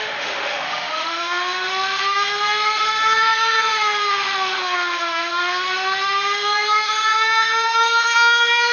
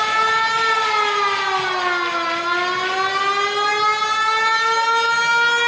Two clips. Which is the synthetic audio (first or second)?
first